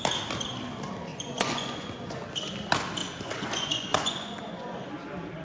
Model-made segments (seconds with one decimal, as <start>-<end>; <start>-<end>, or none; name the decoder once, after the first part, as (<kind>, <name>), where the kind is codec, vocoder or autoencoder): 1.1-2.2 (vocoder, Vocos); 3.0-4.9